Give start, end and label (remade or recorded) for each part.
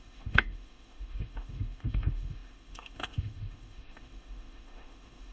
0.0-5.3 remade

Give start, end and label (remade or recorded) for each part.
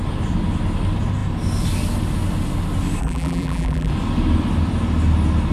0.0-3.0 recorded; 3.0-3.9 remade; 3.9-5.5 recorded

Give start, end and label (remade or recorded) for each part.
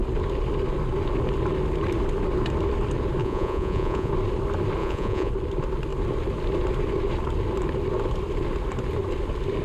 0.0-3.2 recorded; 3.2-4.1 remade; 4.1-4.8 recorded; 4.8-5.3 remade; 5.3-9.6 recorded